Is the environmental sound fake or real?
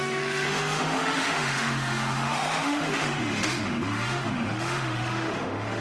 fake